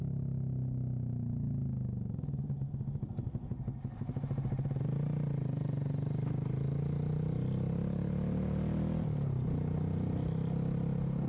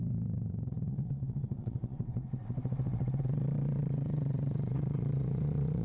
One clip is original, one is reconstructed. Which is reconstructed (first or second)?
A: second